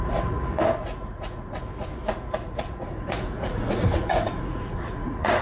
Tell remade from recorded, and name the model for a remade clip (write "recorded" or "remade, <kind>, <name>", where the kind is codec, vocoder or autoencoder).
remade, vocoder, Vocos